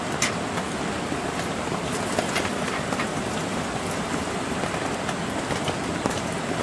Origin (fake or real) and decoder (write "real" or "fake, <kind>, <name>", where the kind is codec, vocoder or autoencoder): fake, vocoder, BigVGAN v2